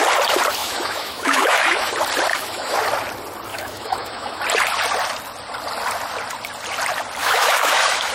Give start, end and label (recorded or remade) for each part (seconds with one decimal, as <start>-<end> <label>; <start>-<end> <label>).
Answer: 0.0-0.6 recorded; 0.6-1.9 remade; 1.9-2.3 recorded; 2.3-2.8 remade; 2.8-3.5 recorded; 3.5-4.4 remade; 4.4-7.2 recorded; 7.2-8.1 remade